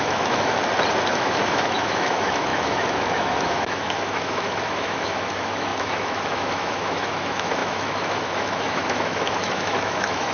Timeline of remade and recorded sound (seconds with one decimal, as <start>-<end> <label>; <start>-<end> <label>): 0.0-0.6 remade; 0.6-1.1 recorded; 1.1-10.3 remade